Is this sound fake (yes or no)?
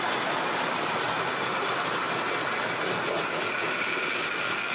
no